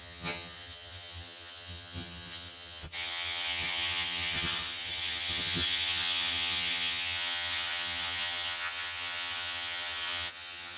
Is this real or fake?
fake